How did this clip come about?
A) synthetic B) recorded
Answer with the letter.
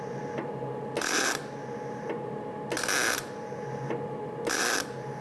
B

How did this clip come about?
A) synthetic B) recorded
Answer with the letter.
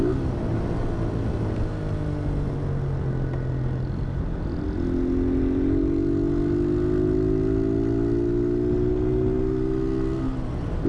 B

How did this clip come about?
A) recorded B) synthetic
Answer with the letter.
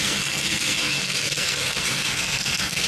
B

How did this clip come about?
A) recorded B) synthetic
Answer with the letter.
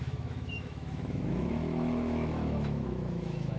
B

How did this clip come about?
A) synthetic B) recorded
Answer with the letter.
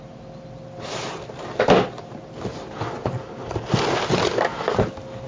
B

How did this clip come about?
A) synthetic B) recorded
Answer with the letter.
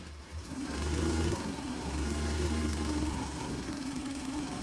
A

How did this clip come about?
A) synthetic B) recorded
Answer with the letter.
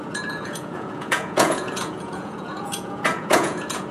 A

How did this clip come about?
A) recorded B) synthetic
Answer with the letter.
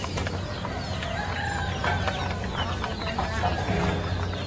A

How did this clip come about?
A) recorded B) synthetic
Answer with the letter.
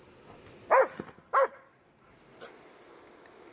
A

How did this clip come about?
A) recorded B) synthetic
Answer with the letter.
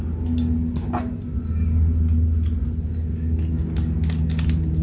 A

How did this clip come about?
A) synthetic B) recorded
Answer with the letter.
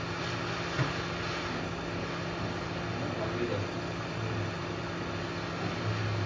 B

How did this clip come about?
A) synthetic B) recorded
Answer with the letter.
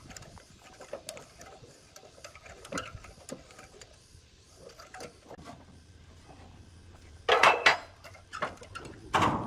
B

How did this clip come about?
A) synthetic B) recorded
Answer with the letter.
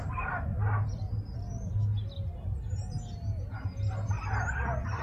B